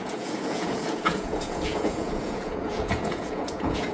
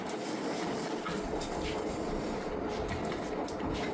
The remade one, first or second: first